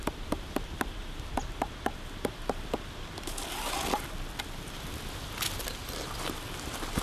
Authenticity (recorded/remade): recorded